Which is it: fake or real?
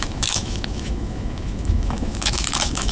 fake